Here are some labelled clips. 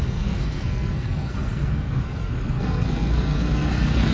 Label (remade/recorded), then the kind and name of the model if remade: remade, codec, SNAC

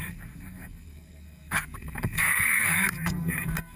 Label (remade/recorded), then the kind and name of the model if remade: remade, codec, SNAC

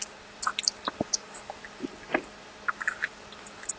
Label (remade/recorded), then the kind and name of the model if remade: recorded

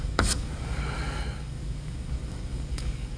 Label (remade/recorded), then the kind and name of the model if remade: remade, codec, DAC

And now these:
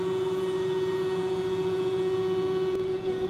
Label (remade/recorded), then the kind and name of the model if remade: remade, vocoder, Vocos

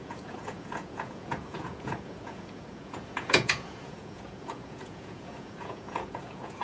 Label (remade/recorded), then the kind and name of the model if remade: remade, vocoder, Vocos